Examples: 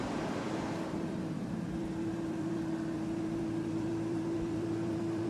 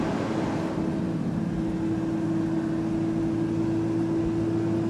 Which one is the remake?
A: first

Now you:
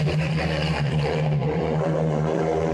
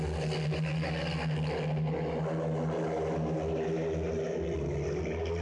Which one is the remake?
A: first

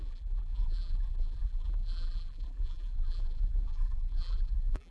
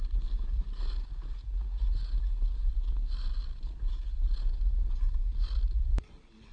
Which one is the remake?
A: first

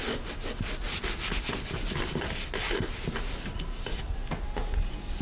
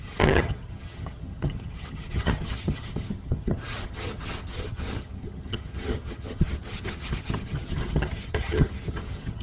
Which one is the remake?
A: second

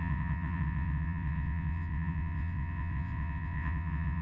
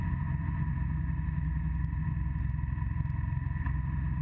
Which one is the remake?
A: first